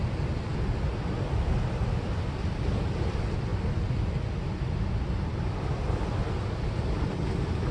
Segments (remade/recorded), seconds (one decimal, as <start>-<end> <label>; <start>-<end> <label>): 0.0-7.7 recorded